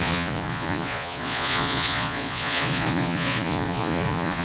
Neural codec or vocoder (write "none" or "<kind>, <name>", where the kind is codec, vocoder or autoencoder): vocoder, Vocos